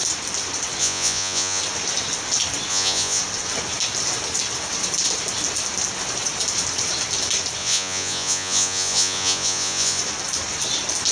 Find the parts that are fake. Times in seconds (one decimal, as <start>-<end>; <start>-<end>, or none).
0.8-1.6; 2.7-3.2; 7.6-10.0